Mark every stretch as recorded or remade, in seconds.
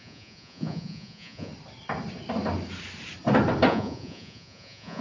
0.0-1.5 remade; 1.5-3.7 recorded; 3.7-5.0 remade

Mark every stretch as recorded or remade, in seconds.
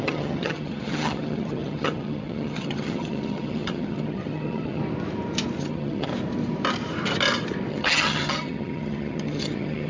0.0-4.8 remade; 4.8-5.6 recorded; 5.6-6.1 remade; 6.1-7.7 recorded; 7.7-9.9 remade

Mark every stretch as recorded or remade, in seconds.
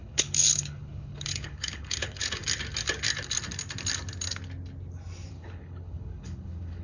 0.0-2.4 remade; 2.4-5.3 recorded; 5.3-6.8 remade